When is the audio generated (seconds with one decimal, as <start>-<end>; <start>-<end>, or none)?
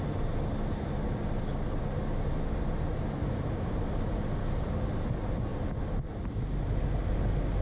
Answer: 3.2-4.2